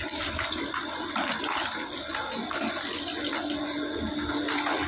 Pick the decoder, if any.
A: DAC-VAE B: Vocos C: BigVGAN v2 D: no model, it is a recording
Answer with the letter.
D